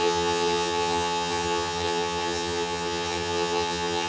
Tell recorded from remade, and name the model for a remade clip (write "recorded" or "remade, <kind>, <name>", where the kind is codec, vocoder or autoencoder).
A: remade, vocoder, HiFi-GAN